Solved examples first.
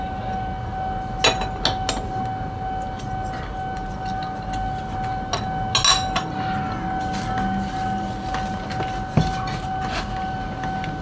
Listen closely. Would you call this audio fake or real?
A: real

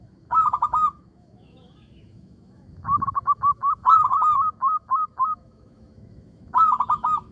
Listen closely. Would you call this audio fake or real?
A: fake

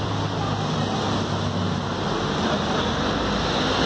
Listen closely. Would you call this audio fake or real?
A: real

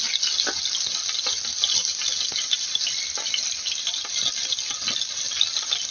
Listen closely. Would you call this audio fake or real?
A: real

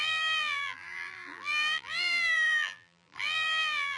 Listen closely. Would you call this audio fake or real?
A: fake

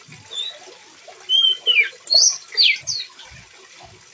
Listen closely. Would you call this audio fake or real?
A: real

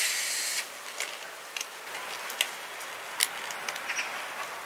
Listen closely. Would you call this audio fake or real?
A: real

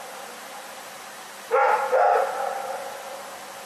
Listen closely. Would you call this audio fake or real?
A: real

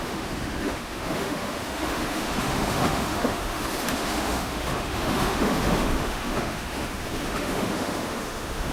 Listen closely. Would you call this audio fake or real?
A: fake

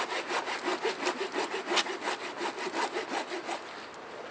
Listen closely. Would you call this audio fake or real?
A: real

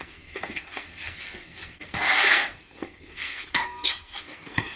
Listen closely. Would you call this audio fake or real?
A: fake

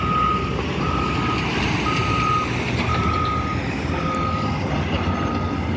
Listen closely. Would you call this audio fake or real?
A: real